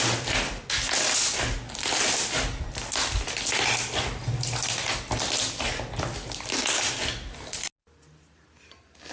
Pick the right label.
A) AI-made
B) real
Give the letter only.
B